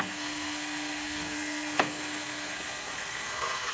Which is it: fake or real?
fake